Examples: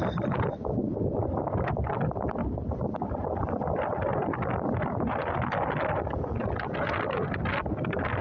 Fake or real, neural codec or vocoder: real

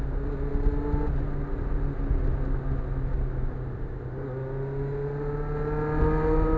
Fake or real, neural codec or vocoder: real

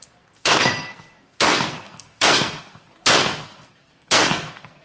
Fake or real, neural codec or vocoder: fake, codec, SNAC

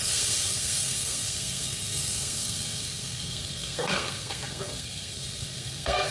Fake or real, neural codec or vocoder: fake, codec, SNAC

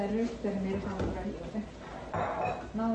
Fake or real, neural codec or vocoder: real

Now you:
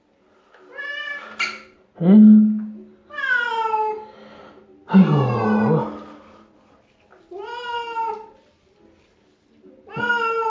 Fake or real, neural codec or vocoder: real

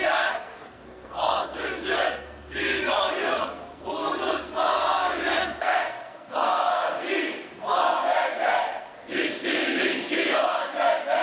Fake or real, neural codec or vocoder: fake, codec, SNAC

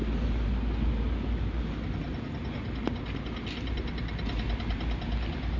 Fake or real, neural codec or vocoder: real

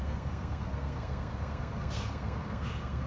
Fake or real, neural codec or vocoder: fake, codec, SNAC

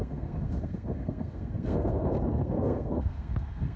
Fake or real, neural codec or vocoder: fake, codec, SNAC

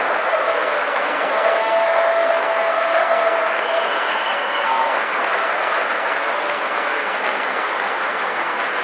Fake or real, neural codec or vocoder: fake, codec, SNAC